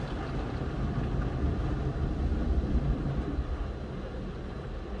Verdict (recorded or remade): recorded